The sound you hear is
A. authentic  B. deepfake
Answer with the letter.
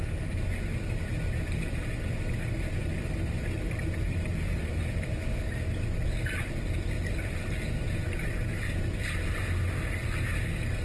A